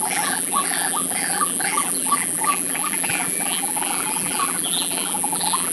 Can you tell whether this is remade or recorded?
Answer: remade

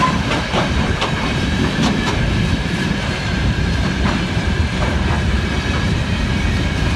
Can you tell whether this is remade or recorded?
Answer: remade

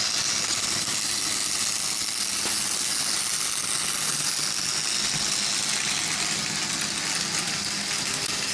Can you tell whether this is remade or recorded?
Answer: recorded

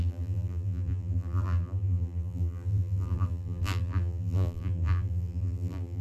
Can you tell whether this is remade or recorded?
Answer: remade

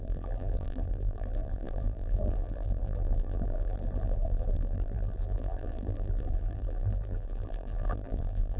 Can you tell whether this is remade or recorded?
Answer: remade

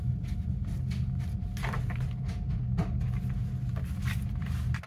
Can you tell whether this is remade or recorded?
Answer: recorded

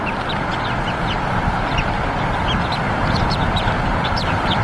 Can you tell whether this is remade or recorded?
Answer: remade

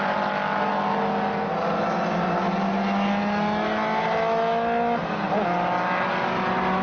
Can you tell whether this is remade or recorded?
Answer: recorded